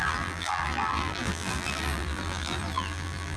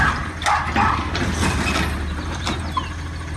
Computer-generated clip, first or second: first